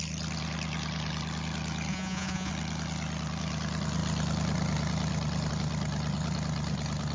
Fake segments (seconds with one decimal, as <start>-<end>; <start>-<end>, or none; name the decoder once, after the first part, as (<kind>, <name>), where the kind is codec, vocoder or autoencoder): 1.9-2.5 (vocoder, Vocos)